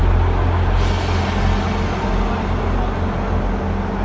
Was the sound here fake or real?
real